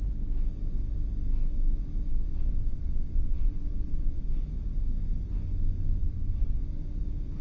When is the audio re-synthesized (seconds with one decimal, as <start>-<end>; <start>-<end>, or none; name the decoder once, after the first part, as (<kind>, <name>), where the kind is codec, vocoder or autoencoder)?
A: 2.1-4.3 (vocoder, WaveNeXt); 6.0-6.6